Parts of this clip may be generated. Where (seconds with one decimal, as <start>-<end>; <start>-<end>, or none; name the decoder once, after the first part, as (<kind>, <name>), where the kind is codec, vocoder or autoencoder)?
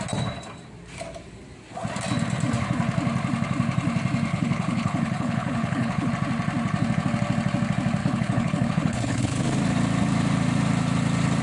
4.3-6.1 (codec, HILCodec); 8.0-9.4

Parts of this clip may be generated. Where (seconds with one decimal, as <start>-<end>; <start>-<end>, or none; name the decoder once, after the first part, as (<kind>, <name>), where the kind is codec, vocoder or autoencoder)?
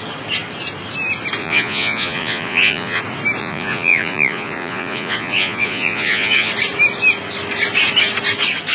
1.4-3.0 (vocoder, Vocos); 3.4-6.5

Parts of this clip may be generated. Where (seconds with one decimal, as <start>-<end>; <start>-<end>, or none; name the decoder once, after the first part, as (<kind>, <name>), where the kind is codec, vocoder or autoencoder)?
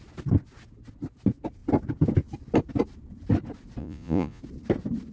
3.8-4.4 (vocoder, Vocos)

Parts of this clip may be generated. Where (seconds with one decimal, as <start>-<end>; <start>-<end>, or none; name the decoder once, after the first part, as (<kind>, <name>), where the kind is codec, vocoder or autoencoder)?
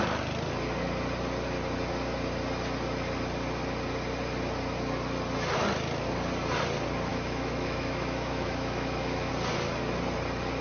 7.1-9.3 (autoencoder, DAC-VAE)